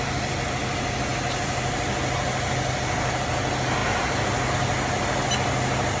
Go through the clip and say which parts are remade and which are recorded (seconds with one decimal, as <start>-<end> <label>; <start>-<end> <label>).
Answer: 0.0-6.0 recorded